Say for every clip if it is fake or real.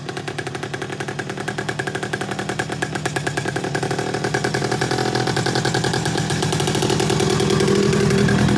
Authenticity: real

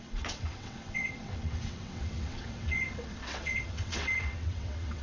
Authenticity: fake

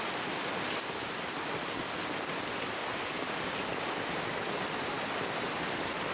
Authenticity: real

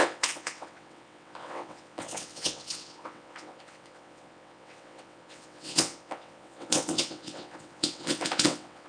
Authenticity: fake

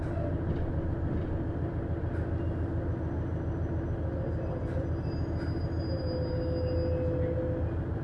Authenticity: real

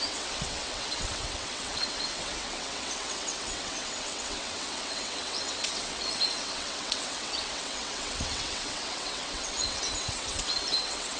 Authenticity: fake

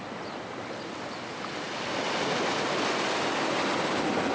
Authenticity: real